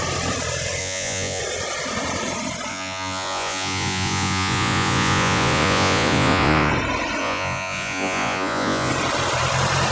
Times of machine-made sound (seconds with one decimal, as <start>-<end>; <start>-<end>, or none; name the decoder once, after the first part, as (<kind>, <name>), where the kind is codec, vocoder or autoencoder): 0.8-1.4 (vocoder, Vocos); 2.7-6.7; 7.2-8.9